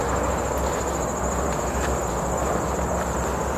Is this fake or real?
real